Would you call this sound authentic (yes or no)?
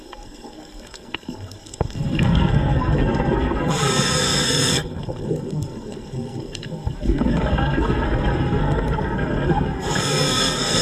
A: no